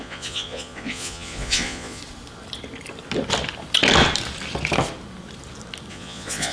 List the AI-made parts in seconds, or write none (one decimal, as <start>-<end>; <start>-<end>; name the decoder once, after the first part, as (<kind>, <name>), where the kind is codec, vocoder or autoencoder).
0.0-2.0 (vocoder, Vocos); 5.9-6.5